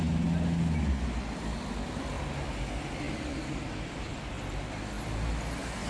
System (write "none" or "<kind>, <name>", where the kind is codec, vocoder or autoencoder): none